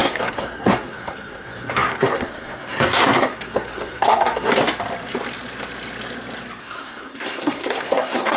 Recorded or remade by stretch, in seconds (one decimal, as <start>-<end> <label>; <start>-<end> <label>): 0.0-4.5 remade; 4.5-6.6 recorded; 6.6-8.4 remade